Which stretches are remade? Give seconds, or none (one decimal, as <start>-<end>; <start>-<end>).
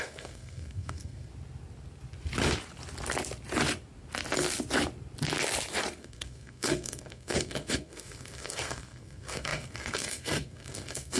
0.0-1.3; 6.0-11.2